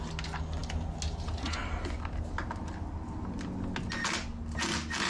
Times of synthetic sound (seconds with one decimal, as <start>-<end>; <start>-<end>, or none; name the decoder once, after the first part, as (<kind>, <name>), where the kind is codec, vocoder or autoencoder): none